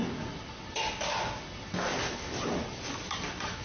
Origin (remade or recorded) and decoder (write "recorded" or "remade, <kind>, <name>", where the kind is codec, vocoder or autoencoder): recorded